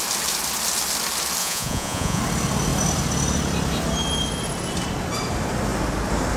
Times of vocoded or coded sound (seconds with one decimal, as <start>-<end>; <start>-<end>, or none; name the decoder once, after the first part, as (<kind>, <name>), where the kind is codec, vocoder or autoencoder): 1.4-2.2 (vocoder, Vocos)